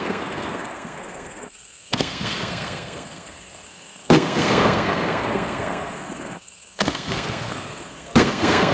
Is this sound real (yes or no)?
no